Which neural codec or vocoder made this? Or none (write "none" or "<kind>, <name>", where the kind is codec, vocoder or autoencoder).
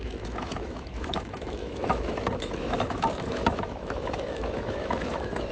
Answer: autoencoder, DAC-VAE